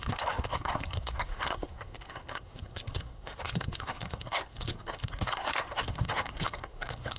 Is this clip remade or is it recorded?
remade